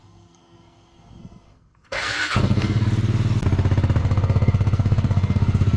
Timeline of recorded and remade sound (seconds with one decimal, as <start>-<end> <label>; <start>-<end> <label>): 0.0-2.8 remade; 2.8-4.0 recorded; 4.0-5.8 remade